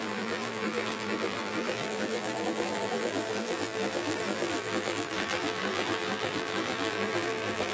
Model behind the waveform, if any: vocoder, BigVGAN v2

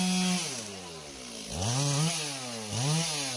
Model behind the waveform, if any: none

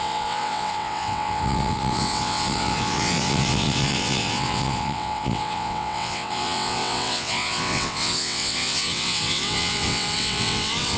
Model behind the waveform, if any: vocoder, WaveNeXt